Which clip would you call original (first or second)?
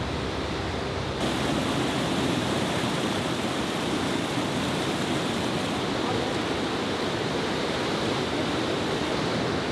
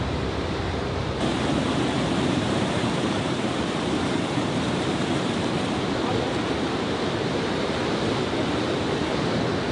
first